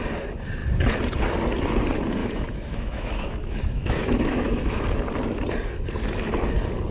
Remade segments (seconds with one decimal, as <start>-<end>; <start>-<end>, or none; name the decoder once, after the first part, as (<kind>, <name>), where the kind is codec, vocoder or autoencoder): 2.2-4.8 (autoencoder, DAC-VAE)